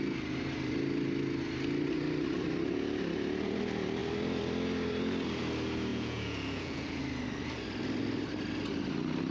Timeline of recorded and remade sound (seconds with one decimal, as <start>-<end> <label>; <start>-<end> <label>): 0.0-5.9 recorded; 5.9-7.0 remade; 7.0-9.3 recorded